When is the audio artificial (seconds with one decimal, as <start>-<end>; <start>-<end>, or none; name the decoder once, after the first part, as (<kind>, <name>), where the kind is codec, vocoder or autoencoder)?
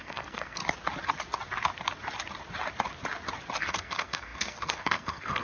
0.0-0.6 (codec, SNAC); 3.6-5.4